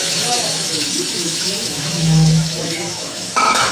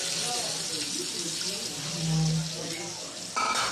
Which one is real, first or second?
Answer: second